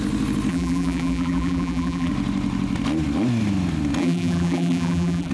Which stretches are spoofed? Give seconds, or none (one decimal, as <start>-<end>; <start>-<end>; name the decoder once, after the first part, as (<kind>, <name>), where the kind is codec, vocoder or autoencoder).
0.5-2.1 (vocoder, BigVGAN v2); 4.0-5.3